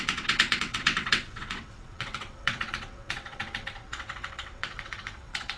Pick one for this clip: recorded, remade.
remade